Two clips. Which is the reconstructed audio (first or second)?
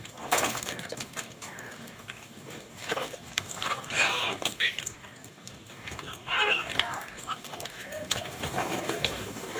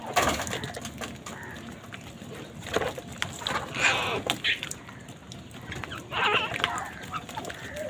first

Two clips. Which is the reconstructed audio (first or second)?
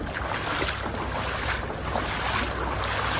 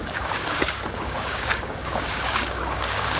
second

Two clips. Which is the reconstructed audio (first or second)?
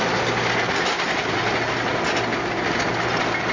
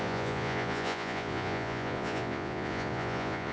second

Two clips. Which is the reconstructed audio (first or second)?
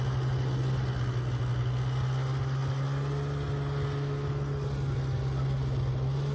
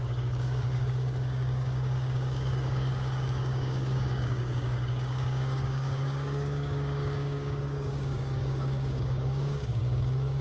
second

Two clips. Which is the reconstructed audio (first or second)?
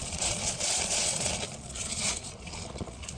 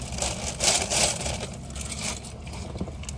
first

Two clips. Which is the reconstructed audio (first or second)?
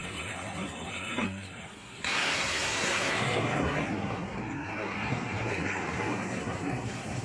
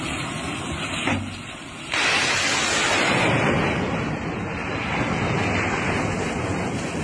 first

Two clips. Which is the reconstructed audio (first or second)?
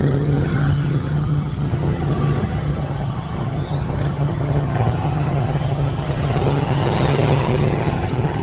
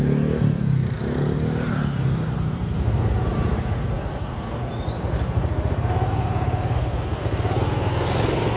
first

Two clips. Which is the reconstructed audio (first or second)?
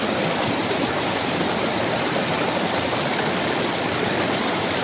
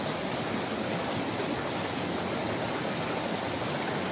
first